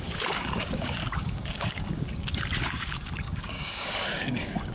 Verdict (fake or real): fake